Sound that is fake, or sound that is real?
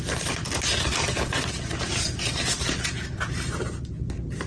real